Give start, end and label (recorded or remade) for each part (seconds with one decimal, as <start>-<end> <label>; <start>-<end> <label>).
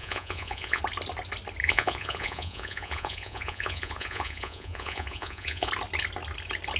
0.0-0.8 remade; 0.8-1.6 recorded; 1.6-5.7 remade; 5.7-6.8 recorded